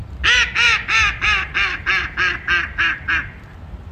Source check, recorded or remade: recorded